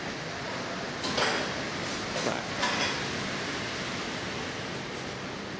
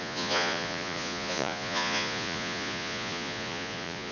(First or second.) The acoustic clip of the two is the first